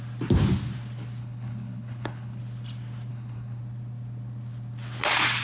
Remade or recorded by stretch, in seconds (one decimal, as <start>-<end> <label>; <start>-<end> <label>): 0.0-1.2 recorded; 1.2-2.4 remade; 2.4-3.1 recorded; 3.1-3.6 remade; 3.6-5.4 recorded

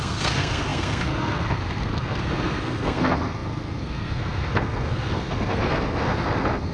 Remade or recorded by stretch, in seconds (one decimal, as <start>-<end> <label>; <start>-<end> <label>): 0.0-6.7 remade

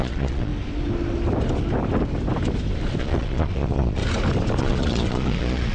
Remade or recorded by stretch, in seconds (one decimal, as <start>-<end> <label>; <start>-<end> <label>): 0.0-0.5 remade; 0.5-3.0 recorded; 3.0-4.0 remade; 4.0-4.6 recorded; 4.6-5.7 remade

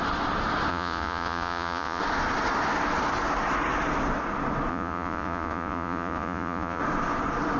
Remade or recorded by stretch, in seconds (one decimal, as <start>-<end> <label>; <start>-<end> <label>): 0.0-0.7 recorded; 0.7-2.0 remade; 2.0-4.7 recorded; 4.7-6.8 remade; 6.8-7.6 recorded

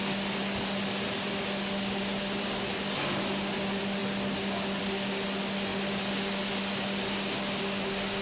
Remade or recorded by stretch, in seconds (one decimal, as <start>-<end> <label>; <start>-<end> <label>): 0.0-8.2 recorded

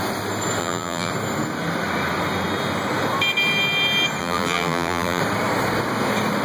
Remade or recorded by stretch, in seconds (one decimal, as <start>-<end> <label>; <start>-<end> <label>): 0.0-0.6 recorded; 0.6-1.1 remade; 1.1-4.2 recorded; 4.2-5.2 remade; 5.2-6.4 recorded

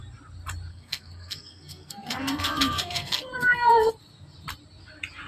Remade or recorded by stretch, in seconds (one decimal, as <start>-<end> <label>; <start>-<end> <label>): 0.0-0.7 recorded; 0.7-3.9 remade; 3.9-5.3 recorded

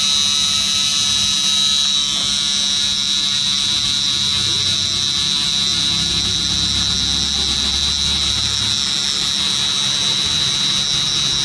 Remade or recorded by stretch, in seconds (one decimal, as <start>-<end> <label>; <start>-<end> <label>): 0.0-11.4 recorded